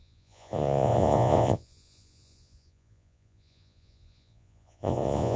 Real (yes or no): no